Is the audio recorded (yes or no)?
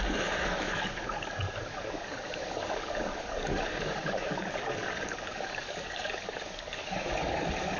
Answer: no